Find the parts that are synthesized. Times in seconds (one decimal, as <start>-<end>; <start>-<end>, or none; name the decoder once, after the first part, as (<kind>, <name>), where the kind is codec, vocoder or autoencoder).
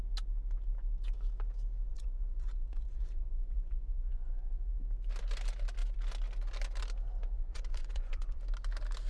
1.9-4.8 (vocoder, Vocos); 7.2-8.4